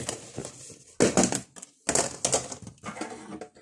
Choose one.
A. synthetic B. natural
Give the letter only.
B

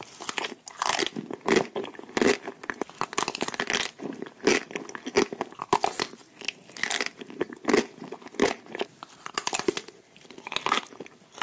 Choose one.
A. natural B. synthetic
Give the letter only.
A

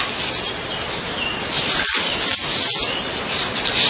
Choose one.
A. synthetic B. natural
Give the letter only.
B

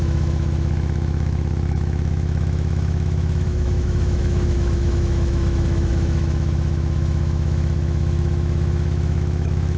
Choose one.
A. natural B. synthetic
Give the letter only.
B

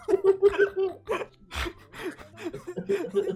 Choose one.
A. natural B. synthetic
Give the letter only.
A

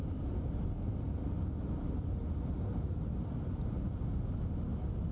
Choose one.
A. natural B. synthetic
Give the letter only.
A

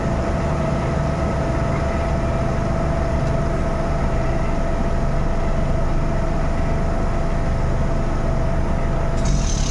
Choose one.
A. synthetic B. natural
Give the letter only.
B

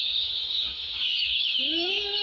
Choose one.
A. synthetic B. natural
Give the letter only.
A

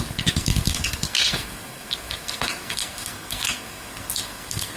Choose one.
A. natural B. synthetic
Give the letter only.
B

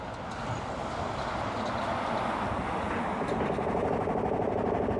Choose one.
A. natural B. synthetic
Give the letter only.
A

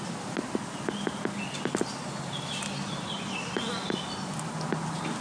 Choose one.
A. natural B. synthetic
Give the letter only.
A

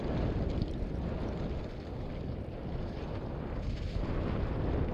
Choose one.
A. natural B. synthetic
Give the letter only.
B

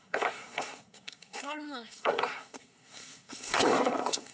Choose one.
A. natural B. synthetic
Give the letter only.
B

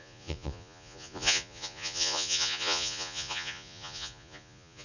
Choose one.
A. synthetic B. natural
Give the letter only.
A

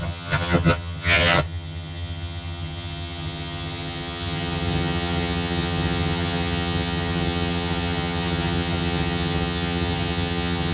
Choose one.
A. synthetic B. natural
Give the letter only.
A